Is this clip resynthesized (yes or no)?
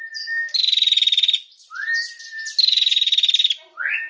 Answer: no